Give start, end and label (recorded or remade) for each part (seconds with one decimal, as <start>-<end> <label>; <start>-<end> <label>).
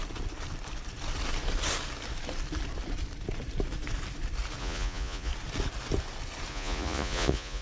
0.0-4.6 recorded; 4.6-5.3 remade; 5.3-6.5 recorded; 6.5-7.6 remade